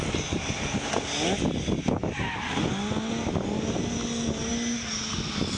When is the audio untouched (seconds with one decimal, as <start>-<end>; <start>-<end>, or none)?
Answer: 0.0-5.6